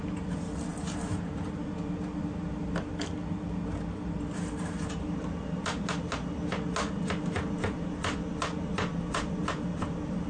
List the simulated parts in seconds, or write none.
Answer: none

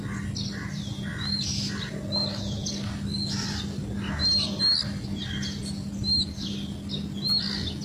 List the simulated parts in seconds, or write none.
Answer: none

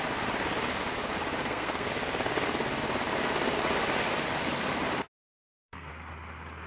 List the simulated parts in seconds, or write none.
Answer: 1.4-1.9 (codec, SNAC); 5.3-5.9